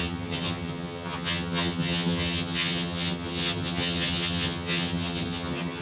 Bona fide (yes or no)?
no